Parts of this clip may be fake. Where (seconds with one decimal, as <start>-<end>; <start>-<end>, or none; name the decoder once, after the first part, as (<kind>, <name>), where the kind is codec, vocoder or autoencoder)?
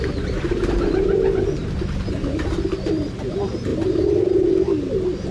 none